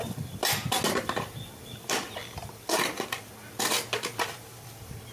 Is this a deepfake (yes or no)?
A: yes